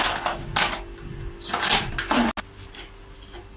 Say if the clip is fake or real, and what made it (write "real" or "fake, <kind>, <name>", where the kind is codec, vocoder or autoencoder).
real